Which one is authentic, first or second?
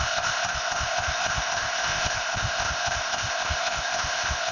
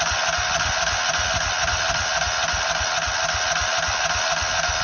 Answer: second